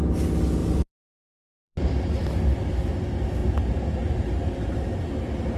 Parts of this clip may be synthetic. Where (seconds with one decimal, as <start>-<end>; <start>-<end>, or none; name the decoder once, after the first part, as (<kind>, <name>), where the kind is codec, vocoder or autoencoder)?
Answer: 0.6-2.2 (vocoder, BigVGAN v2); 3.4-5.0